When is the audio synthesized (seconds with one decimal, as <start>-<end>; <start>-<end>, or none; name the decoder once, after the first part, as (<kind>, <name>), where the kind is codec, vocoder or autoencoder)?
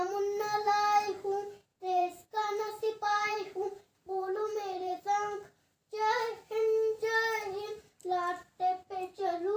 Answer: 1.7-5.0 (vocoder, Vocos)